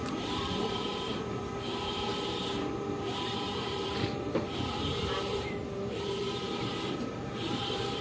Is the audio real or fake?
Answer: fake